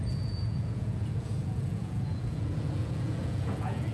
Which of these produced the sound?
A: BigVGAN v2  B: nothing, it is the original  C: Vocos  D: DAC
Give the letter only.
C